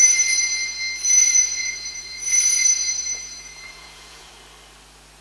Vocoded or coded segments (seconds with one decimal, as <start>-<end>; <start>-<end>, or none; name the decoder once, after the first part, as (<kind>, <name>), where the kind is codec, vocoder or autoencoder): 1.2-4.3 (vocoder, Vocos)